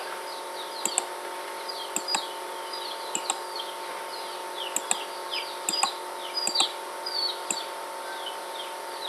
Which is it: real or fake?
real